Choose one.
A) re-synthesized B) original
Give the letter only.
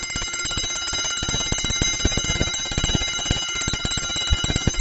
B